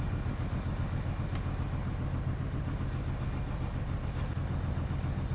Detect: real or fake real